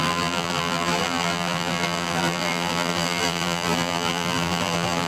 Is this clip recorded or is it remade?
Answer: remade